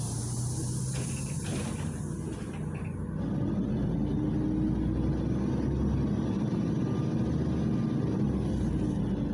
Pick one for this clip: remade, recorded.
recorded